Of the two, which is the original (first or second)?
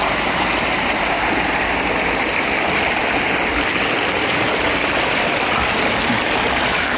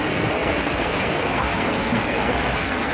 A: first